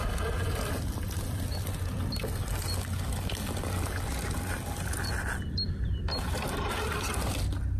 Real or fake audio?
real